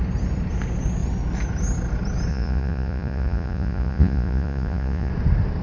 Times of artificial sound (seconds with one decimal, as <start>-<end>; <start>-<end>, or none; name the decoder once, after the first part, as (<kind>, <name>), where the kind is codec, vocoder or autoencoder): 2.3-5.1 (vocoder, Vocos)